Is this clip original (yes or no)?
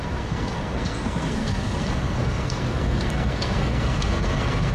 no